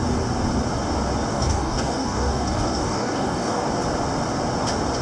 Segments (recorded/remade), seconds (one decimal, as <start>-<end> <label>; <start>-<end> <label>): 0.0-1.3 recorded; 1.3-3.7 remade; 3.7-5.0 recorded